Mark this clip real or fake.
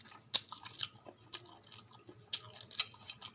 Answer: real